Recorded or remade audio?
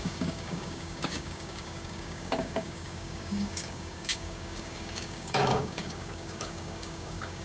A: remade